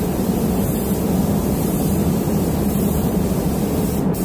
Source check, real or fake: fake